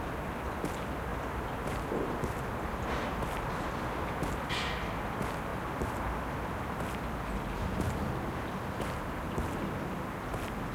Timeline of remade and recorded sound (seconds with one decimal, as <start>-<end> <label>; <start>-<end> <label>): 0.0-10.7 recorded